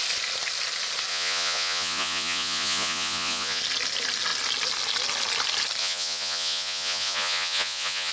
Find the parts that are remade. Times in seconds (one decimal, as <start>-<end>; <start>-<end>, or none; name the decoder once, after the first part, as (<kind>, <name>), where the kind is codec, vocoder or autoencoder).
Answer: 1.1-3.6 (vocoder, Vocos); 5.8-8.1